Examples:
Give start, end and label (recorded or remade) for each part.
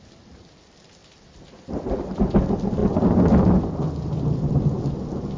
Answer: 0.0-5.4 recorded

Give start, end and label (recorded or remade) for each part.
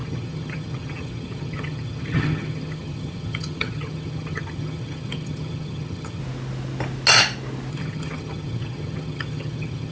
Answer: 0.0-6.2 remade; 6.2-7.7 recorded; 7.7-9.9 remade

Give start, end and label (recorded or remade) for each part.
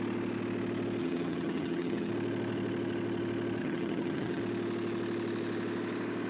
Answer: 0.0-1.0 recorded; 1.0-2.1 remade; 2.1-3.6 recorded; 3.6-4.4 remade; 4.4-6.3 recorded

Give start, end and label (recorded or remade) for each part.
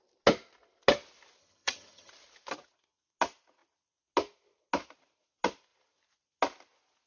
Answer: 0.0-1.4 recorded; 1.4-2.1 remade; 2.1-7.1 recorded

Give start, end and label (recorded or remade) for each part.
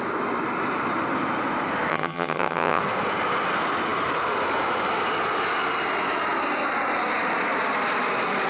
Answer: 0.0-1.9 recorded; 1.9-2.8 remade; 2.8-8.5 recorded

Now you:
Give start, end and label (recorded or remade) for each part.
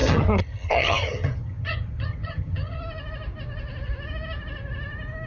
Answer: 0.0-2.8 remade; 2.8-5.3 recorded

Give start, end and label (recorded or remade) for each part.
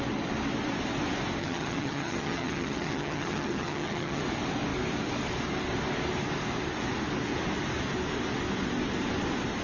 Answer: 0.0-1.4 recorded; 1.4-4.2 remade; 4.2-9.6 recorded